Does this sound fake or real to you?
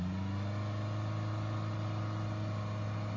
real